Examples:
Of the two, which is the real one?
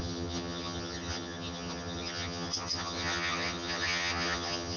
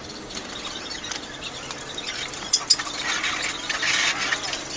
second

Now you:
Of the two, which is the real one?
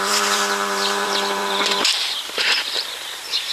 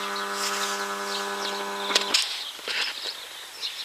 second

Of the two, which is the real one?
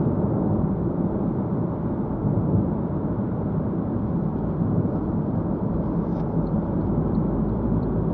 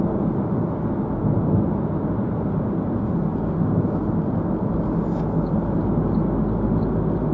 second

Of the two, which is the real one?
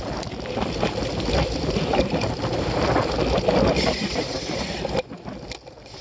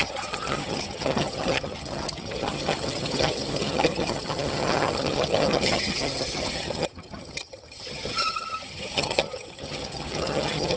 first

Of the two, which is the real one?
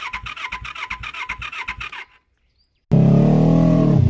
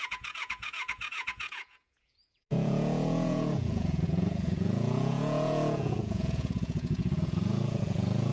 first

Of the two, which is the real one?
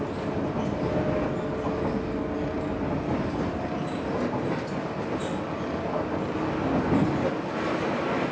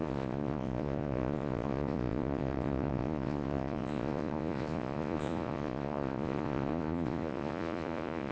first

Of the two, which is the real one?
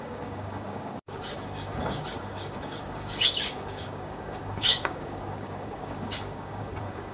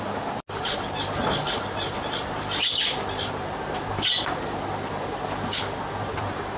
second